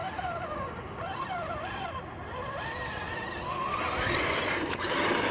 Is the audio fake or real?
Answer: real